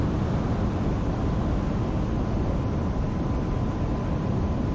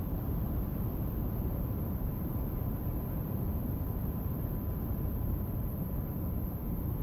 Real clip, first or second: first